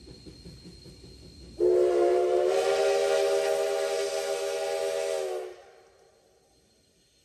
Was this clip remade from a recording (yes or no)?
no